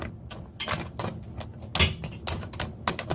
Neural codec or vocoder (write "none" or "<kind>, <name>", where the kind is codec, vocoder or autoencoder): none